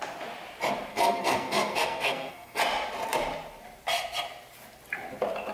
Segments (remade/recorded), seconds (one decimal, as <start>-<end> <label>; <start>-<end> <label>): 0.0-0.9 recorded; 0.9-2.6 remade; 2.6-5.5 recorded